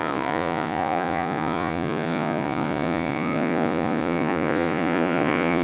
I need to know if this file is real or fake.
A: fake